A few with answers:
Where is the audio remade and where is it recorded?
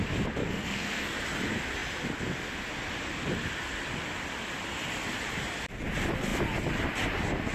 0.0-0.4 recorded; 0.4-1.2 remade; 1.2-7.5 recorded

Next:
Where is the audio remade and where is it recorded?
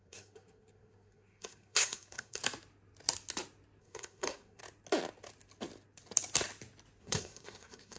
0.0-2.4 remade; 2.4-3.8 recorded; 3.8-4.6 remade; 4.6-7.0 recorded; 7.0-8.0 remade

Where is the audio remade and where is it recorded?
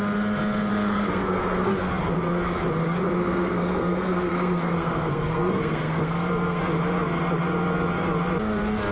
0.0-0.7 recorded; 0.7-1.7 remade; 1.7-3.2 recorded; 3.2-6.6 remade; 6.6-8.9 recorded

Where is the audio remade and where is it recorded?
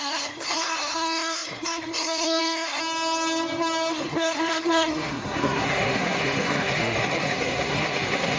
0.0-2.8 remade; 2.8-3.9 recorded; 3.9-8.4 remade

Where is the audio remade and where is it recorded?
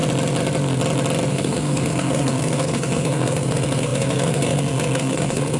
0.0-1.3 recorded; 1.3-5.6 remade